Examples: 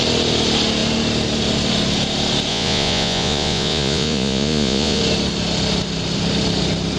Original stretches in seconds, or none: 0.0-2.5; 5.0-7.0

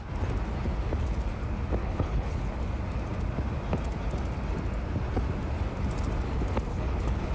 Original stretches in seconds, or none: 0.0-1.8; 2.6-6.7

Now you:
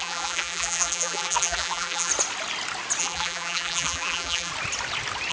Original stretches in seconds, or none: 2.1-3.0; 4.5-5.3

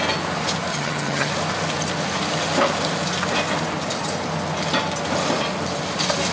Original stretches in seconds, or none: 0.0-0.7; 1.3-6.3

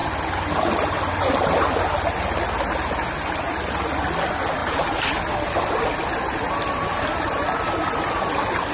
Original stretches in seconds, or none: 0.0-4.6; 5.2-8.7